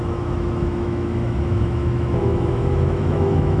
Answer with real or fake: fake